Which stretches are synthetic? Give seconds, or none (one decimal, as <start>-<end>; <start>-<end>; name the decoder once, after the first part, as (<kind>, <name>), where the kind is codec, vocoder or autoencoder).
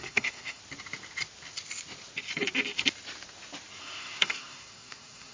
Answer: 0.0-0.6 (codec, SNAC); 3.8-5.3